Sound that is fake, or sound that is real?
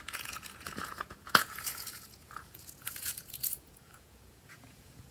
fake